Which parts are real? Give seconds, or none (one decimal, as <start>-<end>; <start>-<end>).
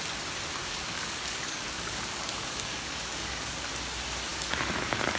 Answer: 0.0-0.6; 3.7-4.3